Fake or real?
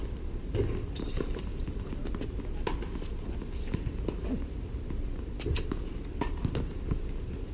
real